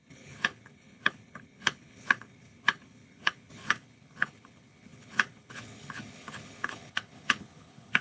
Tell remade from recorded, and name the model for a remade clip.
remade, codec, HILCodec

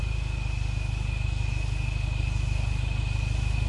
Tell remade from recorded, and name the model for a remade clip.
recorded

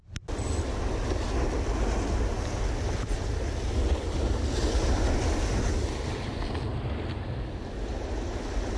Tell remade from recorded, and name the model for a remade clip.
recorded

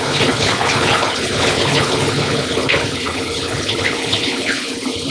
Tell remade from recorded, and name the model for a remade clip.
remade, codec, HILCodec